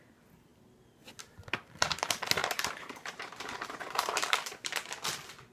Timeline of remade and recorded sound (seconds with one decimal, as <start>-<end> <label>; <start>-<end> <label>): 0.0-2.4 recorded; 2.4-4.4 remade; 4.4-5.5 recorded